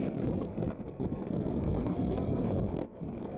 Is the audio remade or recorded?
remade